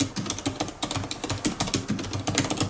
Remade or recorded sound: recorded